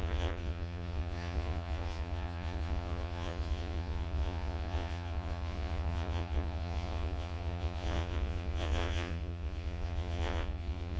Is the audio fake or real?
fake